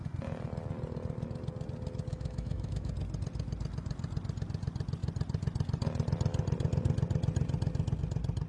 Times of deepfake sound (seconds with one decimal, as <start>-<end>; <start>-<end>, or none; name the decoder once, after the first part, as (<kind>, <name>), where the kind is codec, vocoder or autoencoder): 2.1-2.9 (autoencoder, DAC-VAE)